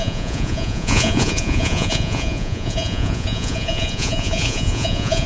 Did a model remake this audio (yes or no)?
yes